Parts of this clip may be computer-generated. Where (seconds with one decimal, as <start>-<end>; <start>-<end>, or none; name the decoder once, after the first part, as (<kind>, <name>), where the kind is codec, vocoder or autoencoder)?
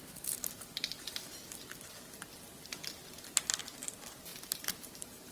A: 0.0-0.6 (vocoder, BigVGAN v2); 4.3-5.3